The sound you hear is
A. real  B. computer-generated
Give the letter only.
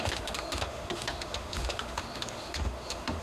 B